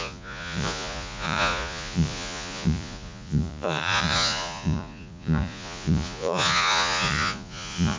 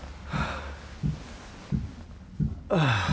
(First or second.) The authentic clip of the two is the second